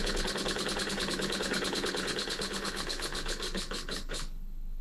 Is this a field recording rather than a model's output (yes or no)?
no